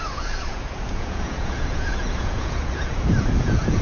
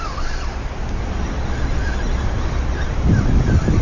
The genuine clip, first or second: second